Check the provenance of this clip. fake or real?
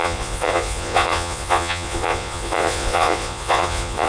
fake